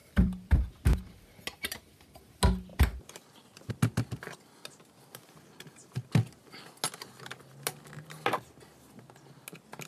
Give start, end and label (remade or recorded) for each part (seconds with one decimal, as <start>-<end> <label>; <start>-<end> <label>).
0.0-0.7 remade; 0.7-9.9 recorded